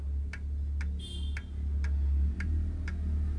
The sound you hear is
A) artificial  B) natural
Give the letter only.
B